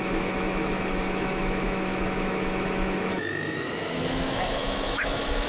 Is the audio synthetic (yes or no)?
yes